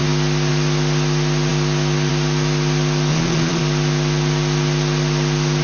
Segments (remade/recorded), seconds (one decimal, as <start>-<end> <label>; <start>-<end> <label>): 0.0-3.1 recorded; 3.1-3.6 remade; 3.6-5.6 recorded